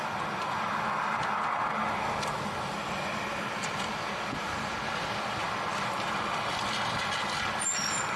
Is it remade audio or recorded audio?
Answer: recorded